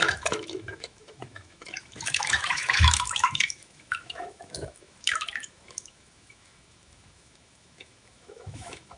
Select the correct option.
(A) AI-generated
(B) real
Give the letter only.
A